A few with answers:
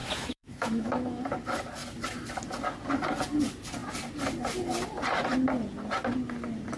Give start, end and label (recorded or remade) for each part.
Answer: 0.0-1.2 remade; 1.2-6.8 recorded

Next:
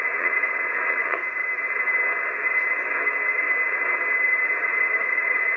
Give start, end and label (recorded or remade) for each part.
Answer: 0.0-1.2 remade; 1.2-4.6 recorded; 4.6-5.6 remade

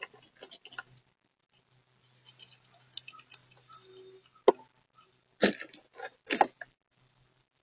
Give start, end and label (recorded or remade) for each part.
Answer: 0.0-7.6 recorded